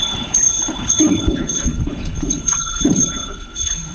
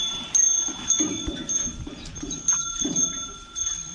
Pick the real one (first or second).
second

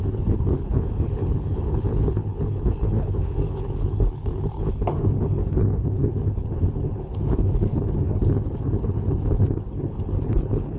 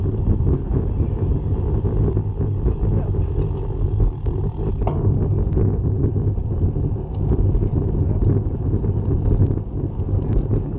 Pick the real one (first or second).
second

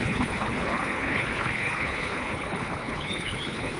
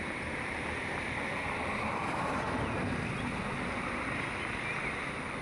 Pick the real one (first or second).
second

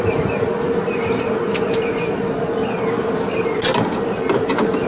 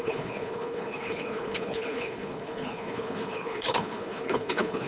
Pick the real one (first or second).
first